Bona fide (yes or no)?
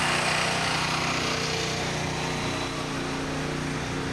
yes